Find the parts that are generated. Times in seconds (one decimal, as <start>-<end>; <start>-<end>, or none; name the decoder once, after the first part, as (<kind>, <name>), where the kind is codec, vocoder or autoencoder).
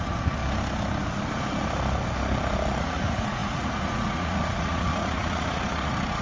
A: 0.0-0.4 (vocoder, Vocos); 2.8-6.2